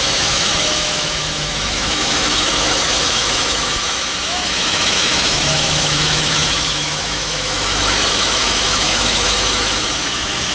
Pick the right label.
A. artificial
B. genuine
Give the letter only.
A